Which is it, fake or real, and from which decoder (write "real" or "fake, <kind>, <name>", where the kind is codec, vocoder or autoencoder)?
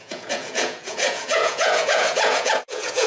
fake, vocoder, Vocos